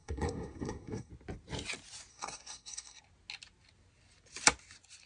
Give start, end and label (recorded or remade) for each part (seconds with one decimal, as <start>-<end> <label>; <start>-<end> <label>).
0.0-1.1 remade; 1.1-2.1 recorded; 2.1-3.0 remade; 3.0-5.1 recorded